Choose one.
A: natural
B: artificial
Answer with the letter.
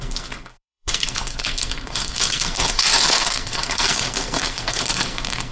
B